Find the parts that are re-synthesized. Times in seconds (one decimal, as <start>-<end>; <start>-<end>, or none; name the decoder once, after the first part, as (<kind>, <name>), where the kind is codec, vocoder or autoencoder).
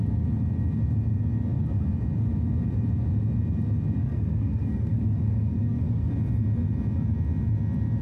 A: 4.0-6.1 (codec, SNAC)